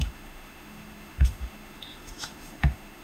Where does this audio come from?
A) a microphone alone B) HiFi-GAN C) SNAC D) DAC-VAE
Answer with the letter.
D